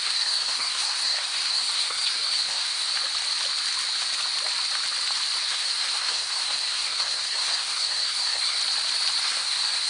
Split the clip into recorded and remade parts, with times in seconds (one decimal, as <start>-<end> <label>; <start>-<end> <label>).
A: 0.0-2.9 remade; 2.9-5.5 recorded; 5.5-8.6 remade; 8.6-9.2 recorded; 9.2-9.9 remade